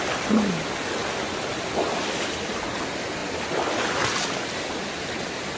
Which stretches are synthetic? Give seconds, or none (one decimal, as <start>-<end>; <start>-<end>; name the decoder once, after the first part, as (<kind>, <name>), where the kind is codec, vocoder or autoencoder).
none